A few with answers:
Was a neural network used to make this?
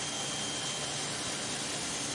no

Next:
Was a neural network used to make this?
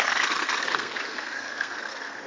yes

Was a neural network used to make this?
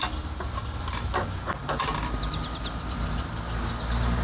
no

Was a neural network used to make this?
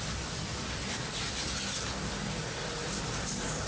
no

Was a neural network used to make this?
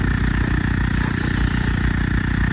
no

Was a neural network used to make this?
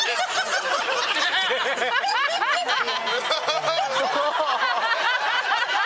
no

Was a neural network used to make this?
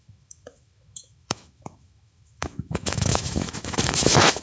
yes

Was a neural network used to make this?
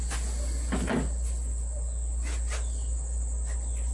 no